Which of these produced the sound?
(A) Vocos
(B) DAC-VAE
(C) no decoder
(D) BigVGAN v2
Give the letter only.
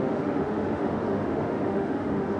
B